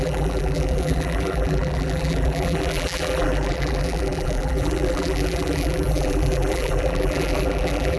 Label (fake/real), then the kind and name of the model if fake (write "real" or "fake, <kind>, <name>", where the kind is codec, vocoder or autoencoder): fake, vocoder, BigVGAN v2